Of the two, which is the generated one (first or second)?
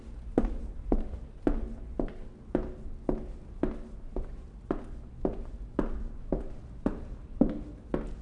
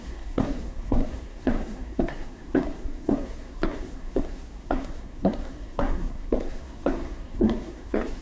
second